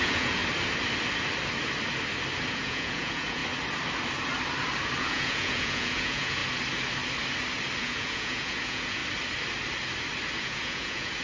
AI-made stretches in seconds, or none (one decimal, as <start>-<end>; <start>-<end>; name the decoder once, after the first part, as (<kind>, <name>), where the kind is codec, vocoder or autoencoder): 0.0-0.4 (vocoder, Vocos); 2.5-3.4; 5.0-6.4; 7.8-9.0; 10.4-11.2